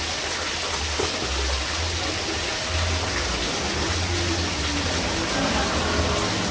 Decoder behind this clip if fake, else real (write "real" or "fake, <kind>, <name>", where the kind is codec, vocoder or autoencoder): real